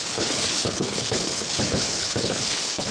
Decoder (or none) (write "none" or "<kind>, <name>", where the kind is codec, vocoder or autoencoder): codec, HILCodec